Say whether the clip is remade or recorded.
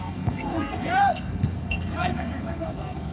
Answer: remade